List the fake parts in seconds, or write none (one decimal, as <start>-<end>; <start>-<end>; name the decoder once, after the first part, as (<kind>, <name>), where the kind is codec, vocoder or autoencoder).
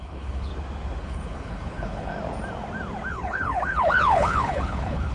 0.0-0.5 (codec, HILCodec); 1.0-2.1; 3.1-5.1